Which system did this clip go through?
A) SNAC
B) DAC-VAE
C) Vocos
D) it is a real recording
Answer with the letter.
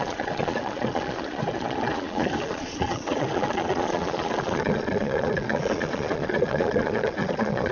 C